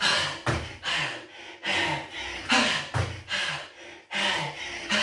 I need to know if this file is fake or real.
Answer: real